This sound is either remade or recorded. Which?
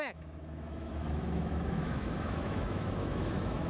remade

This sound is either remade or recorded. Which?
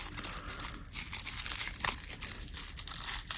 recorded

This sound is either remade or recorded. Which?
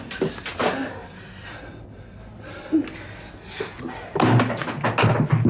recorded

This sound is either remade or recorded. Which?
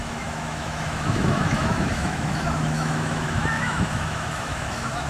remade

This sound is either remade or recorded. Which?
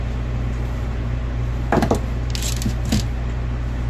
recorded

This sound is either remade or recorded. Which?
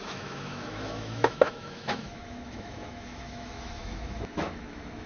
remade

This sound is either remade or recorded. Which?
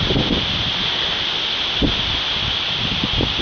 recorded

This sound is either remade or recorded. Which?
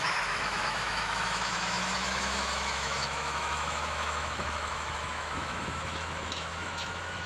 remade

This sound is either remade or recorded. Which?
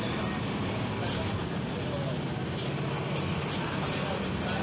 recorded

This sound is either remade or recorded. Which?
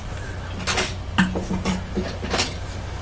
recorded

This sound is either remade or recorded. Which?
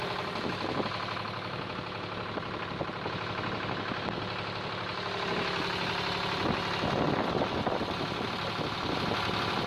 recorded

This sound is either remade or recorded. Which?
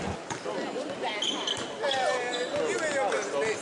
recorded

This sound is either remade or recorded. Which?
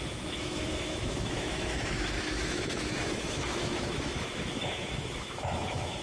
remade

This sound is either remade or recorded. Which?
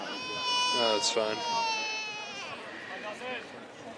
recorded